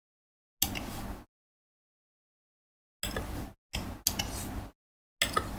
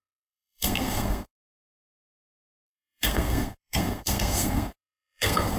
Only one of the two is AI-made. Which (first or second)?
second